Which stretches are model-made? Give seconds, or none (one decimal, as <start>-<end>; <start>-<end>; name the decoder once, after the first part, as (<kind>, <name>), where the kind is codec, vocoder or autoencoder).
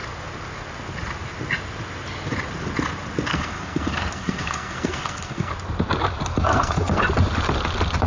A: 3.3-5.5 (codec, SNAC); 6.3-7.0